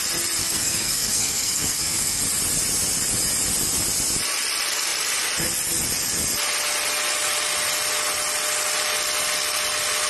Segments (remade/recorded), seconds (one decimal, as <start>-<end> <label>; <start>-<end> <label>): 0.0-0.4 recorded; 0.4-2.2 remade; 2.2-10.1 recorded